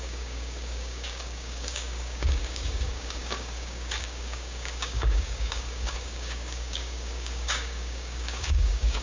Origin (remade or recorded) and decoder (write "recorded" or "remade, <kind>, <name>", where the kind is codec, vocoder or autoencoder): remade, codec, DAC